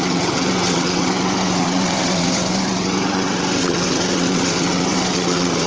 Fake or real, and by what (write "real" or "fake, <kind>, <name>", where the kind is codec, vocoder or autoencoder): fake, vocoder, WaveNeXt